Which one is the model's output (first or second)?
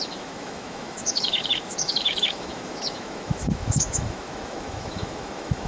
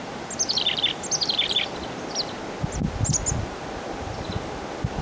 first